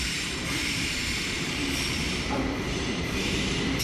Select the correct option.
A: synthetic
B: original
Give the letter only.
A